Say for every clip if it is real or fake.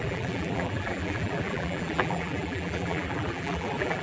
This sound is fake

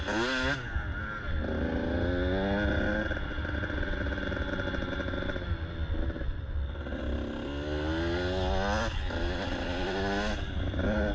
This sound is real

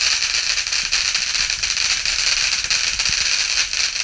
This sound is real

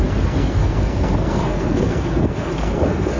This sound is fake